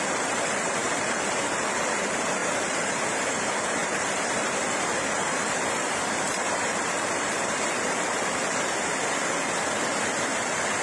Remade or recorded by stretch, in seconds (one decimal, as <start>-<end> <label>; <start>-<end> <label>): 0.0-0.8 recorded; 0.8-1.7 remade; 1.7-2.4 recorded; 2.4-2.9 remade; 2.9-3.8 recorded; 3.8-7.3 remade; 7.3-10.8 recorded